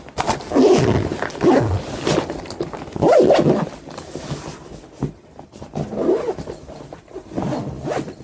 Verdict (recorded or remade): recorded